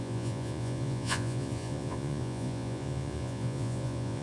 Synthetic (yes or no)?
yes